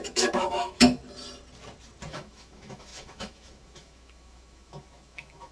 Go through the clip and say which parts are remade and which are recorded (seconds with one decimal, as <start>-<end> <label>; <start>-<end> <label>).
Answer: 0.0-1.0 remade; 1.0-2.1 recorded; 2.1-5.5 remade